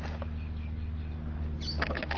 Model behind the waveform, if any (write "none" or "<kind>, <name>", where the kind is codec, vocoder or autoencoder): none